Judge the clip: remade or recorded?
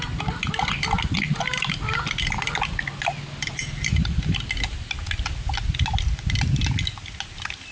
recorded